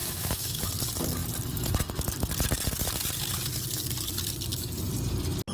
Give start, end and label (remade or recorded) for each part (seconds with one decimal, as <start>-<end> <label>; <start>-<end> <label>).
0.0-0.7 remade; 0.7-5.5 recorded